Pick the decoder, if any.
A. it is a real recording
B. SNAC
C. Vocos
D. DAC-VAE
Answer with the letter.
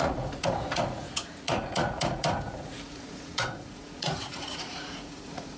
C